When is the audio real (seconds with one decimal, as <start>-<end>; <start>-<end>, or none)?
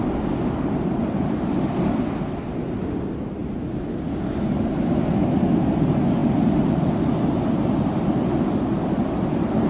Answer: 0.0-9.7